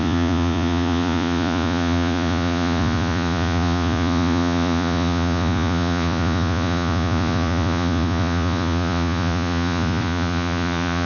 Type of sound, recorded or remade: remade